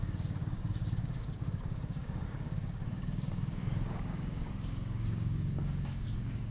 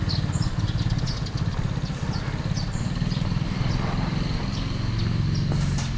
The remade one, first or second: first